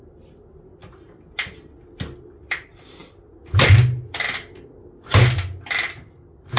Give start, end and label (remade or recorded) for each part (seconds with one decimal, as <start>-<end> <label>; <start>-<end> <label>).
0.0-6.6 recorded